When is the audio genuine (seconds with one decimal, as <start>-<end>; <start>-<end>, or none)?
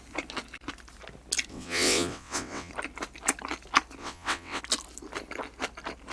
0.0-1.5; 2.7-4.0; 4.6-6.1